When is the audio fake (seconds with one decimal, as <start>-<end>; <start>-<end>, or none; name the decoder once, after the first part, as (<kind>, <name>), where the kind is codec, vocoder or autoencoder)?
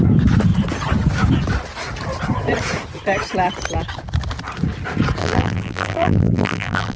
5.2-7.0 (vocoder, BigVGAN v2)